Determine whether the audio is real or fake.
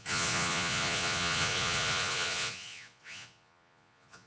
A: fake